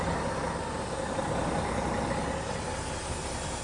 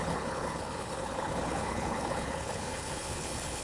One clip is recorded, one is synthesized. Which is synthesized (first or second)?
second